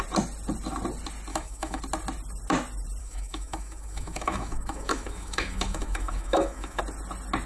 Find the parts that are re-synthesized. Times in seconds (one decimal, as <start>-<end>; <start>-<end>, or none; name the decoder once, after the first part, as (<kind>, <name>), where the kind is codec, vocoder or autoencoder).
1.3-1.8 (autoencoder, DAC-VAE); 3.0-6.8